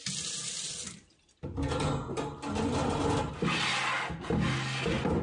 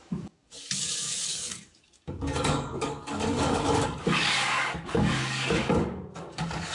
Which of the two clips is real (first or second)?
first